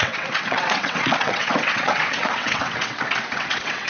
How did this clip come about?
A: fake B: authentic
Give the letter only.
A